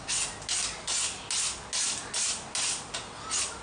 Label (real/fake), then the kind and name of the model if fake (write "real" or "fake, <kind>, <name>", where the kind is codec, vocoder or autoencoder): real